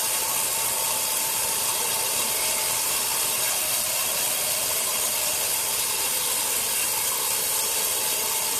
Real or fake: real